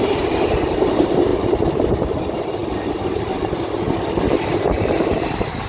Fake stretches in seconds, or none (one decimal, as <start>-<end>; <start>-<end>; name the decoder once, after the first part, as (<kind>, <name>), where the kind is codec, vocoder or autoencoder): 1.3-2.1 (vocoder, BigVGAN v2)